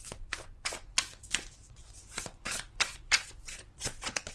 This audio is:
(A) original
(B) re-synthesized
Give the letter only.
B